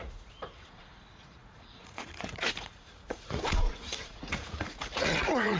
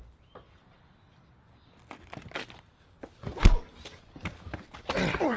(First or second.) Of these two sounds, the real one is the second